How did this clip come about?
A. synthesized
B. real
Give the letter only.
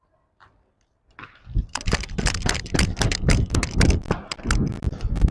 B